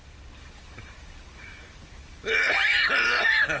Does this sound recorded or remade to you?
recorded